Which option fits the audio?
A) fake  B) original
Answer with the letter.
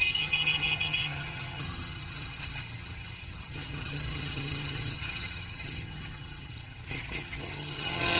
A